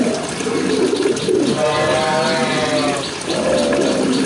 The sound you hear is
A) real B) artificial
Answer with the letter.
A